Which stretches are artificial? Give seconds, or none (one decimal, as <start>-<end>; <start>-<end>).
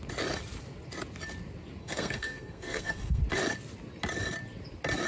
1.8-3.2